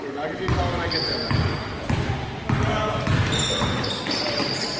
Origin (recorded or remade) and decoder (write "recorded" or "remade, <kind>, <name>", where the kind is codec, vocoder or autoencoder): recorded